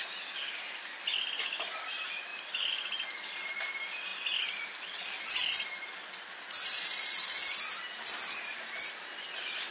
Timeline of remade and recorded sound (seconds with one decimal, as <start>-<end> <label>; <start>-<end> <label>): 0.0-9.7 recorded